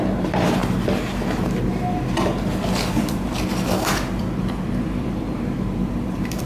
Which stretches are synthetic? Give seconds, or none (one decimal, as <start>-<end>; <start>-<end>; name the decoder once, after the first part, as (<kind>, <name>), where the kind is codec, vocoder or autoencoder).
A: 0.0-0.6 (vocoder, BigVGAN v2); 3.0-3.5; 4.6-6.5